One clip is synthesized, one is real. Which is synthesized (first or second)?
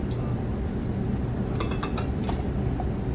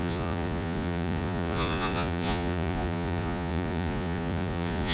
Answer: second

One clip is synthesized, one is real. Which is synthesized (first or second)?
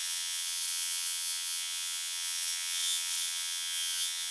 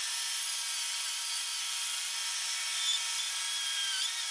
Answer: first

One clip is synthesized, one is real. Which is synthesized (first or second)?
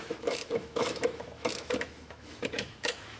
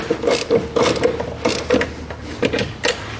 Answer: first